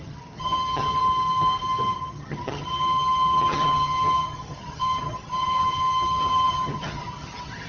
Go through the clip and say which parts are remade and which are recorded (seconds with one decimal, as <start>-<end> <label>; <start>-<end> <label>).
0.0-1.0 remade; 1.0-2.0 recorded; 2.0-7.7 remade